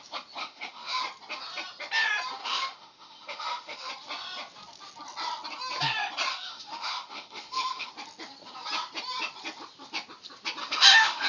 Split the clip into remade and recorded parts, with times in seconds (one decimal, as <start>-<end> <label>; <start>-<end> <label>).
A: 0.0-0.4 recorded; 0.4-1.0 remade; 1.0-2.4 recorded; 2.4-3.9 remade; 3.9-6.3 recorded; 6.3-7.9 remade; 7.9-10.6 recorded; 10.6-11.3 remade